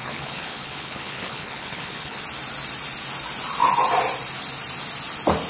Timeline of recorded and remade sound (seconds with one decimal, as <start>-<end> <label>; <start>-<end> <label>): 0.0-2.2 remade; 2.2-5.5 recorded